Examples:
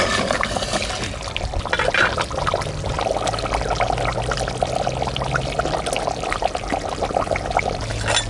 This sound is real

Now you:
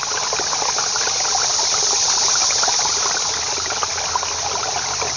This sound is real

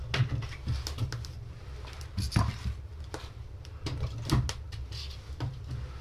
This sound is real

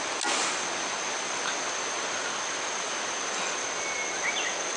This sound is real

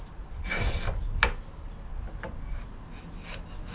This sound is real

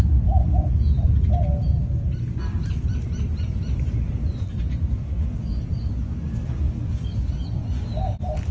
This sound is real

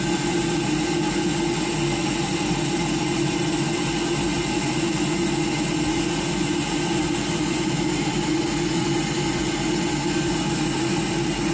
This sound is real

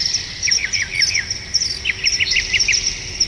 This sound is real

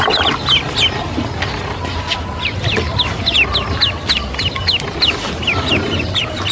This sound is real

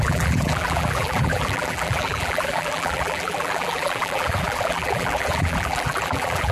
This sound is fake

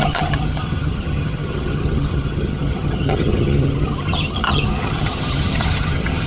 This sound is fake